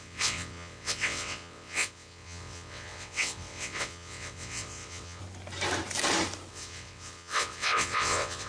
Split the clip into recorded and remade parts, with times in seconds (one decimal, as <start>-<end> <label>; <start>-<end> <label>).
0.0-5.2 remade; 5.2-6.5 recorded; 6.5-8.5 remade